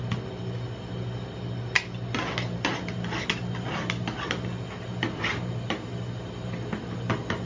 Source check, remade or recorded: recorded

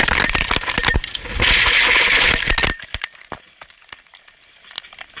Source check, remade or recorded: recorded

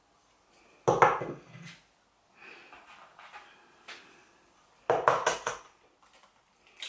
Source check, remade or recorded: recorded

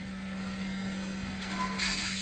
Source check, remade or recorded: remade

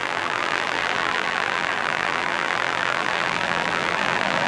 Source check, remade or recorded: remade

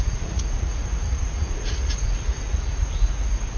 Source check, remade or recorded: remade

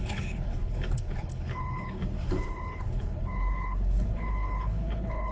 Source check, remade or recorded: remade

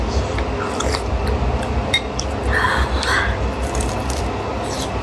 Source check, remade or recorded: recorded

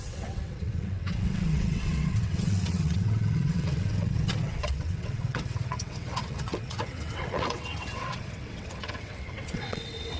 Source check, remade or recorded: remade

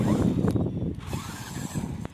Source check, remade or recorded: recorded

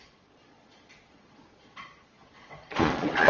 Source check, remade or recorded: remade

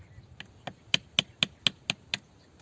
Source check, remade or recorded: recorded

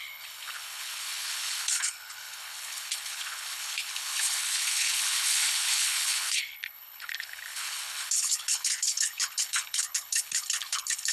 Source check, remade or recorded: remade